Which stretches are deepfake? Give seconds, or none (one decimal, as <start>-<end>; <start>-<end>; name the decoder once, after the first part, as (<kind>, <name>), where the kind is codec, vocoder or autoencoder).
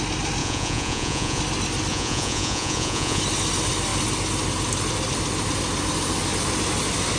0.4-1.4 (vocoder, Vocos); 1.9-3.2